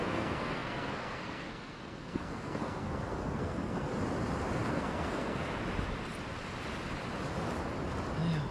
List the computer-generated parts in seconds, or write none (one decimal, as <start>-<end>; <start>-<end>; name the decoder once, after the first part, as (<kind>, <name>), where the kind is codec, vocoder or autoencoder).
0.0-3.9 (codec, SNAC); 4.7-5.6